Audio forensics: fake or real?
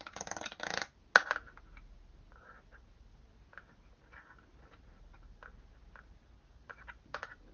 real